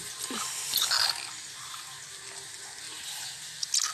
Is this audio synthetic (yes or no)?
no